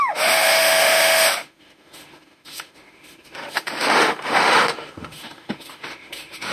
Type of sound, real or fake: fake